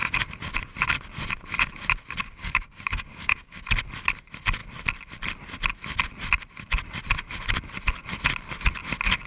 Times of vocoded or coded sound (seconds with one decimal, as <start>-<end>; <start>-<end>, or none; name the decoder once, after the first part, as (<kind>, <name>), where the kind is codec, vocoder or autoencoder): 2.2-3.6 (codec, DAC)